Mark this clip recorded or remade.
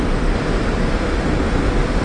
recorded